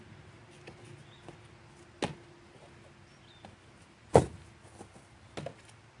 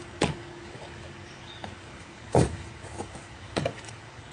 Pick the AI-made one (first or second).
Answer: second